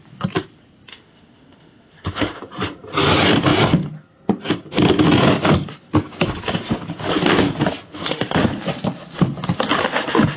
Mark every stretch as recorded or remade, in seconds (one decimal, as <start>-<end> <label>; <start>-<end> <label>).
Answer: 0.0-0.9 recorded; 0.9-2.4 remade; 2.4-7.9 recorded; 7.9-8.5 remade; 8.5-10.4 recorded